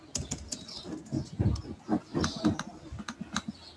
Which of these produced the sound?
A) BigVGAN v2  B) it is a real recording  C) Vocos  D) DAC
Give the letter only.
B